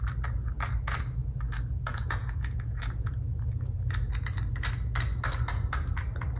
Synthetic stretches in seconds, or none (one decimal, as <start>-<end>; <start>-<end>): 1.9-3.2